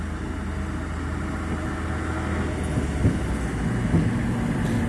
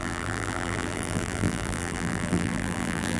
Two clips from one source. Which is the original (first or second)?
first